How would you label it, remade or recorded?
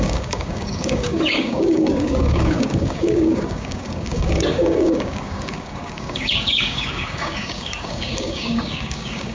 remade